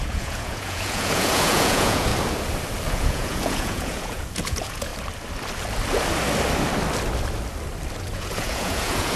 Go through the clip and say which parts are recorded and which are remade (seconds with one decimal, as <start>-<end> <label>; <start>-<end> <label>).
0.0-2.1 remade; 2.1-2.9 recorded; 2.9-4.9 remade; 4.9-8.0 recorded; 8.0-9.2 remade

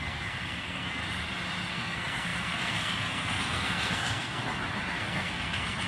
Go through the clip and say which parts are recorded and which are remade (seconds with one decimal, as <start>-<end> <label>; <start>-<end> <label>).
0.0-1.0 remade; 1.0-1.7 recorded; 1.7-4.4 remade; 4.4-4.9 recorded; 4.9-5.9 remade

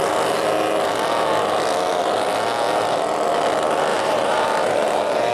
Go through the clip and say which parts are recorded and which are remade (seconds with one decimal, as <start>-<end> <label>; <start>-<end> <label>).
0.0-3.9 recorded; 3.9-5.3 remade

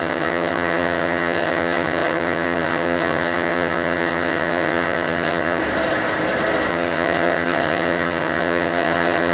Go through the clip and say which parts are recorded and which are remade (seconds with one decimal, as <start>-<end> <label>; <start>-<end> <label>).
0.0-5.6 remade; 5.6-6.7 recorded; 6.7-9.3 remade

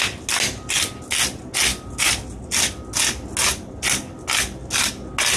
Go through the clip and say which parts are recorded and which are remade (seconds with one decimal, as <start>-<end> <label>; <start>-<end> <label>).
0.0-5.4 recorded

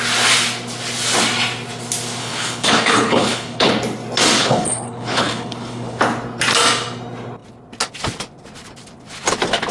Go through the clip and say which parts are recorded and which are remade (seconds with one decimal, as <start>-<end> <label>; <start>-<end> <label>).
0.0-2.2 recorded; 2.2-3.7 remade; 3.7-4.4 recorded; 4.4-6.0 remade; 6.0-9.7 recorded

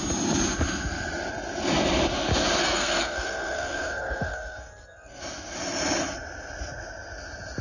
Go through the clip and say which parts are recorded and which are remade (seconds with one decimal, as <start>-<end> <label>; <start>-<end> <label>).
0.0-2.6 recorded; 2.6-5.2 remade; 5.2-7.6 recorded